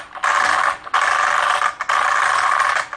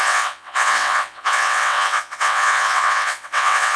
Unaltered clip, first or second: first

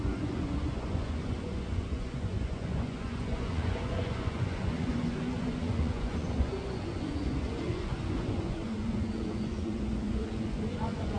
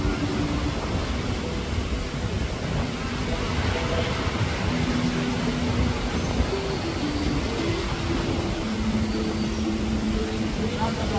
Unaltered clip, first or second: second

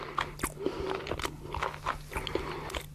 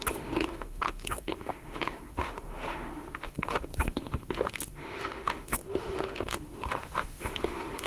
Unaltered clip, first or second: first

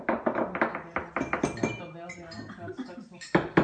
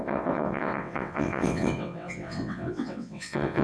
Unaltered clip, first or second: first